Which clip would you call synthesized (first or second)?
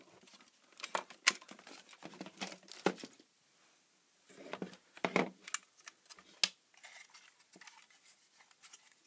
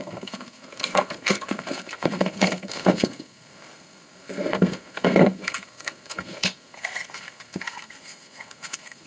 second